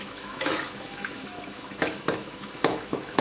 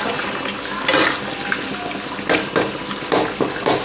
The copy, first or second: first